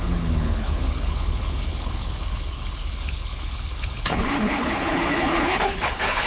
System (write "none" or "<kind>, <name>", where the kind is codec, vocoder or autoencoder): codec, HILCodec